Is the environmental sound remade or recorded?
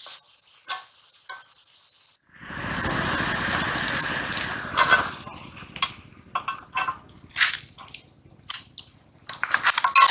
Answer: recorded